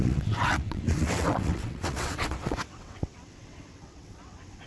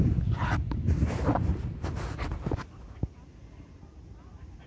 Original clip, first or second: second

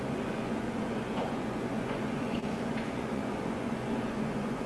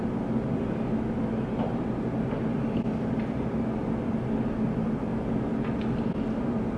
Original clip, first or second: second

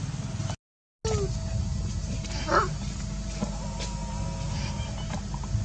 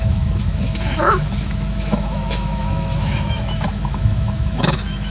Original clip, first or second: first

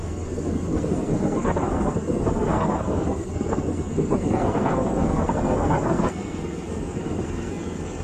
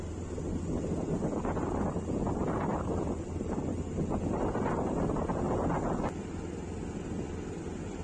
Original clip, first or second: second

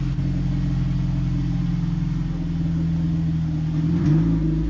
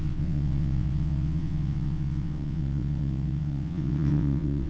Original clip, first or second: first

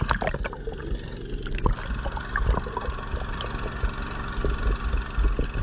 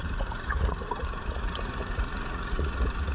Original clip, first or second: first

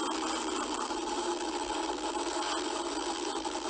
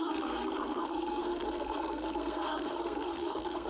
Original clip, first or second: first